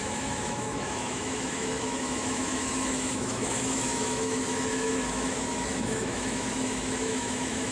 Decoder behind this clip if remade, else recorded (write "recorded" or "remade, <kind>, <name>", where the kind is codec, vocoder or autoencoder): remade, autoencoder, DAC-VAE